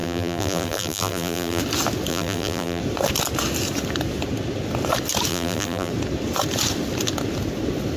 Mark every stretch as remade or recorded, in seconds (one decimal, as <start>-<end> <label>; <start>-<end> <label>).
0.0-1.6 remade; 1.6-2.1 recorded; 2.1-2.8 remade; 2.8-5.3 recorded; 5.3-5.9 remade; 5.9-8.0 recorded